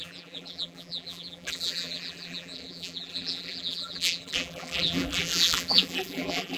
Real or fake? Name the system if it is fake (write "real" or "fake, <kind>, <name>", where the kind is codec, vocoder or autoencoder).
fake, vocoder, BigVGAN v2